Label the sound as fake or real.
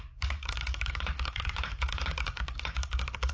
fake